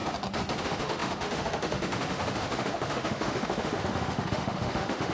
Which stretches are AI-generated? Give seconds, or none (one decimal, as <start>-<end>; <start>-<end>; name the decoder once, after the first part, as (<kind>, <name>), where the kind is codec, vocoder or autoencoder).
0.6-5.1 (autoencoder, DAC-VAE)